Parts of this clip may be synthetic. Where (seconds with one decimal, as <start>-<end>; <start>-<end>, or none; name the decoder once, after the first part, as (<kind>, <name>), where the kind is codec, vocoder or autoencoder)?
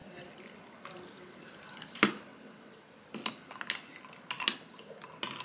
2.3-3.0 (vocoder, WaveNeXt)